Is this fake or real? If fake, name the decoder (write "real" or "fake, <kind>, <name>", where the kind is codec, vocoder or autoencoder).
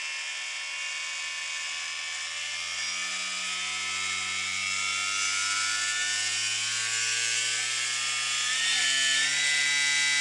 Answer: real